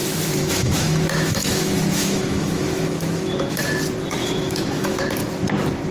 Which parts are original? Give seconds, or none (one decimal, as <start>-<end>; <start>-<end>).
3.5-4.2; 5.0-5.9